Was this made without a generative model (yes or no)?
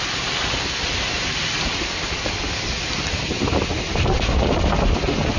yes